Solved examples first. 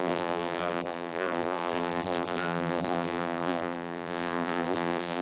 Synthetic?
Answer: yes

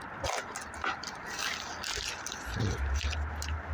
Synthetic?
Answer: no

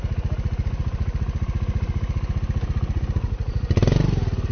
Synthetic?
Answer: no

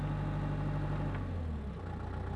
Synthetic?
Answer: no